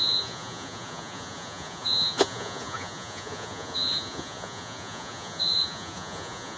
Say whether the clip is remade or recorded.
remade